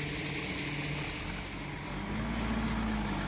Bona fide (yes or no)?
yes